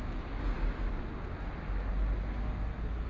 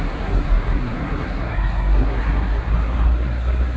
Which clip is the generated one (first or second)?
second